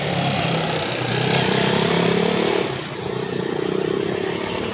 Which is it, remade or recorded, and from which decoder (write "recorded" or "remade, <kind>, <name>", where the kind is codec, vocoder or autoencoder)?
recorded